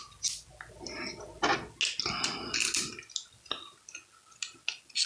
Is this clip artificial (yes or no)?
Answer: no